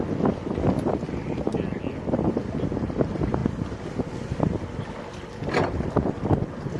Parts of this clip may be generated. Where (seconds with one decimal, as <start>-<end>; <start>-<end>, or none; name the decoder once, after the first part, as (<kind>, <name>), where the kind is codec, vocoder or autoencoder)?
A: none